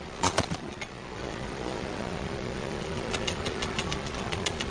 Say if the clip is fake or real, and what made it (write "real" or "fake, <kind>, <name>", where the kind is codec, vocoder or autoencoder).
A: fake, vocoder, Vocos